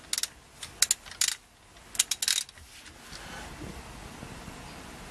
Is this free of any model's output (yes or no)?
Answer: yes